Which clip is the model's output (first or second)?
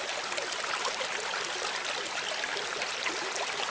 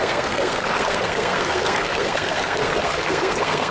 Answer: second